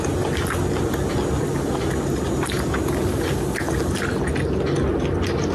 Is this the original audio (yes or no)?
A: yes